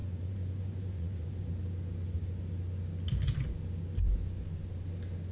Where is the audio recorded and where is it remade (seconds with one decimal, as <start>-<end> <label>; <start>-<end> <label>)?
0.0-1.5 remade; 1.5-5.3 recorded